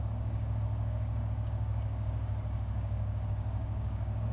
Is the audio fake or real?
fake